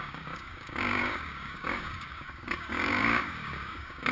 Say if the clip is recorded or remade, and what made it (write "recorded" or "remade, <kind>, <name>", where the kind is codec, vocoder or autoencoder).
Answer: remade, codec, DAC